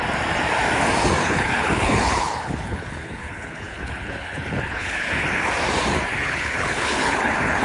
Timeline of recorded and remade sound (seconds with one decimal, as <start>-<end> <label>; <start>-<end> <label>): 0.0-1.2 recorded; 1.2-5.5 remade; 5.5-6.1 recorded; 6.1-7.6 remade